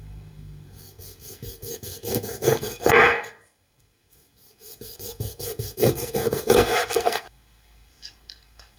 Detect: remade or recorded remade